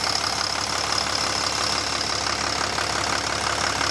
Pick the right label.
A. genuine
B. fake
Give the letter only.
A